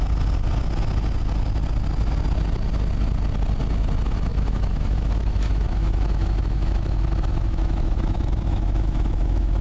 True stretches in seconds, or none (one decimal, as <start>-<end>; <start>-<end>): 0.0-4.3